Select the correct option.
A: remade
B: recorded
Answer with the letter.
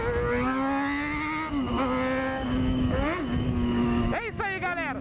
B